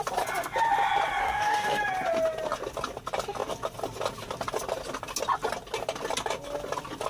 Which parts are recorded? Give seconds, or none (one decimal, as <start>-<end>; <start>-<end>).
0.0-1.2; 1.8-7.1